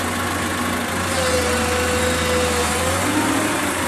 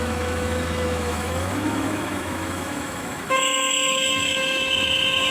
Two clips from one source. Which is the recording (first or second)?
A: first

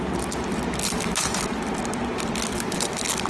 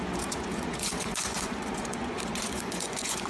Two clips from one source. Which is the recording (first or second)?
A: first